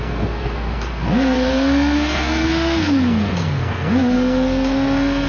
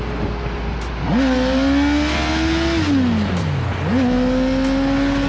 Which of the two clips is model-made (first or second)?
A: first